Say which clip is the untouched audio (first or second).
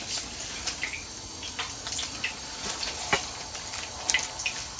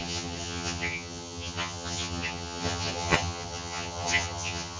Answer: first